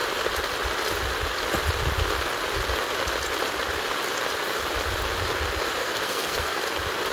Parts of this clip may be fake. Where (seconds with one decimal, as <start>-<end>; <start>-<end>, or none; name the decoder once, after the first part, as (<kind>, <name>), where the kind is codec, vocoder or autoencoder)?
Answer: 5.8-6.6 (codec, SNAC)